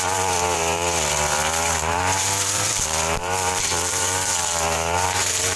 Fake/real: fake